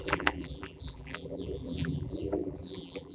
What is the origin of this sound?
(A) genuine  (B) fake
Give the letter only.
B